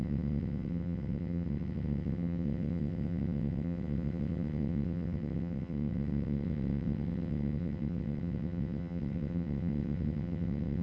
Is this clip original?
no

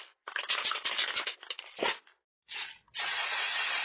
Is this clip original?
yes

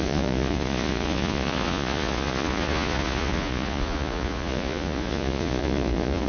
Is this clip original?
no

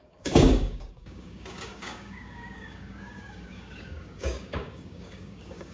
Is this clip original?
no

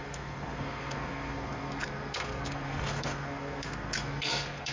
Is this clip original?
no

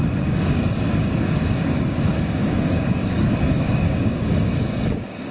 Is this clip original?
no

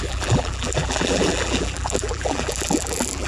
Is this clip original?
no